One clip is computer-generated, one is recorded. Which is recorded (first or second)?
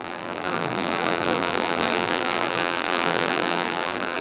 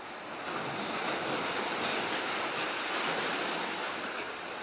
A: second